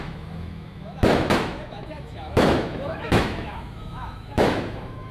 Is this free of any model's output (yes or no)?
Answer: no